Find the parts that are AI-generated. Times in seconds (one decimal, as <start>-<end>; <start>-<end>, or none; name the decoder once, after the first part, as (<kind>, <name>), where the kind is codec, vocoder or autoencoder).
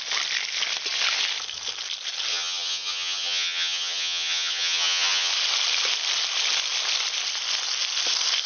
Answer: 2.3-5.3 (vocoder, HiFi-GAN)